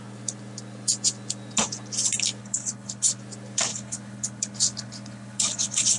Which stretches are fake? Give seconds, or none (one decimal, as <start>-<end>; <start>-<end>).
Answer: 2.4-3.2; 3.7-6.0